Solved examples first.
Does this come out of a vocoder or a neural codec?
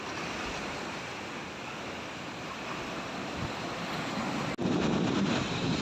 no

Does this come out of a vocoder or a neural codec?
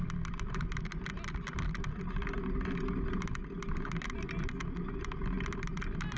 no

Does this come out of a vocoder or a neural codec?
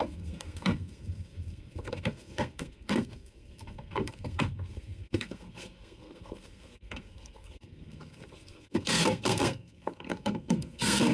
yes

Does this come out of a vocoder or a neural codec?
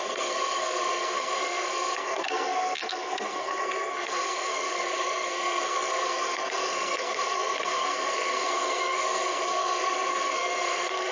yes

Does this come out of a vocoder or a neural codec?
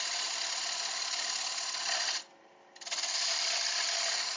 no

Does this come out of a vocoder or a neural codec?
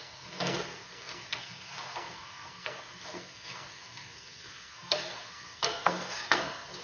yes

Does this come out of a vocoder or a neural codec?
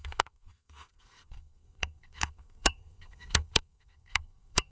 yes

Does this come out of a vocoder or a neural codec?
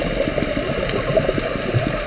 no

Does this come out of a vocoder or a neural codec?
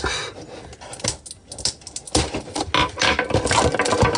no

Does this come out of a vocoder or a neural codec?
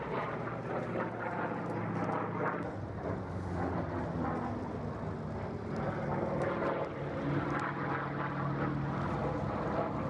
no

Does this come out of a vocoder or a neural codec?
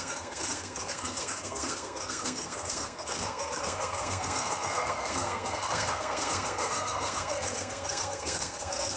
yes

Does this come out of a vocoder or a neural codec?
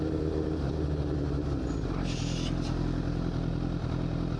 no